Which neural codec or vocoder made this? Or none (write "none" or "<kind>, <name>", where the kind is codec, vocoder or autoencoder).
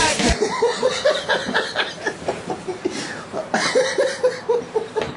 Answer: vocoder, BigVGAN v2